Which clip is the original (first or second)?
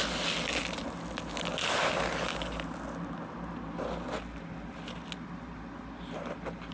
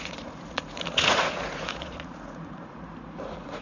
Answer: first